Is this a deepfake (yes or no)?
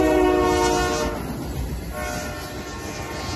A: no